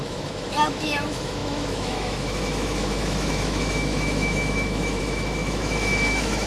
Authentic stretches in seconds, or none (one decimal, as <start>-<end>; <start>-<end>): none